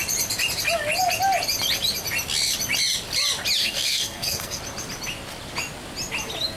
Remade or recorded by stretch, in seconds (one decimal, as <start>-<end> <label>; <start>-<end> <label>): 0.0-3.6 recorded; 3.6-4.6 remade; 4.6-6.6 recorded